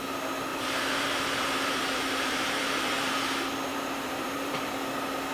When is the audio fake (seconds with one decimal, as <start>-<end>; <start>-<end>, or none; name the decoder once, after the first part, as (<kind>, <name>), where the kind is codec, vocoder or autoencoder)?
0.5-3.1 (vocoder, BigVGAN v2); 3.7-4.7